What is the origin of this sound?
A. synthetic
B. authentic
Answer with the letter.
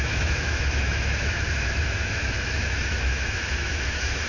A